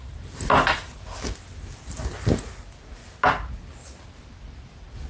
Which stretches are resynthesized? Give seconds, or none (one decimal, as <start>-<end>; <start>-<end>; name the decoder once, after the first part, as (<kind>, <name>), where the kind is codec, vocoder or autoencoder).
none